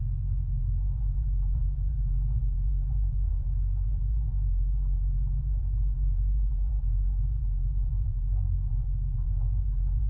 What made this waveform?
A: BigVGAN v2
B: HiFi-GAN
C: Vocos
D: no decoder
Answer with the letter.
A